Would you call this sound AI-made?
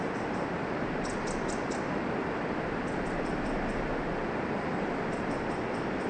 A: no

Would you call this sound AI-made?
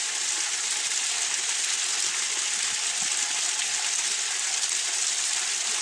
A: no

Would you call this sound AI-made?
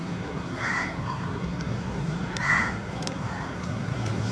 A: yes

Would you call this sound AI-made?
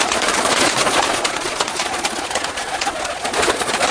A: yes